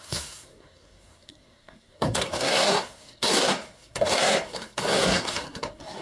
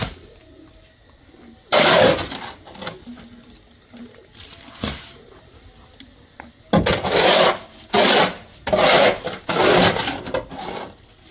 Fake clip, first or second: first